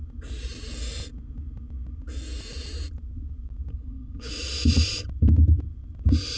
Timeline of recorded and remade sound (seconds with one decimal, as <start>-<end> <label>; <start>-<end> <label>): 0.0-3.7 recorded; 3.7-4.3 remade; 4.3-6.4 recorded